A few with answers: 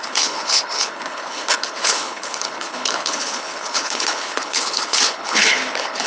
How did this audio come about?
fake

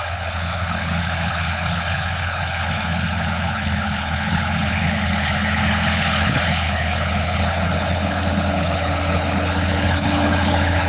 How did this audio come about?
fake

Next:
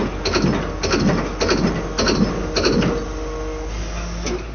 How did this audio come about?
real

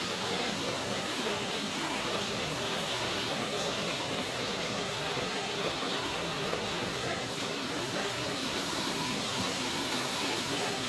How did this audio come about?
fake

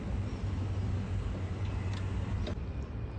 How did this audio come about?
real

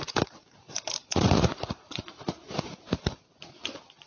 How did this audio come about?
fake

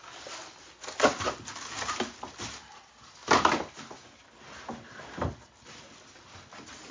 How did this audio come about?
real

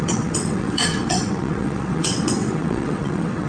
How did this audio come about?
fake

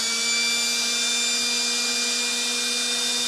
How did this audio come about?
real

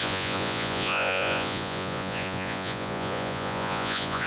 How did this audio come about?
fake